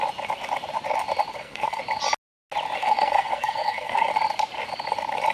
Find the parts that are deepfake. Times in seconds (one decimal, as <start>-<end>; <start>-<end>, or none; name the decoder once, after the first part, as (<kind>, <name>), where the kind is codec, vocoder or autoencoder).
1.3-1.8 (codec, SNAC); 2.8-4.1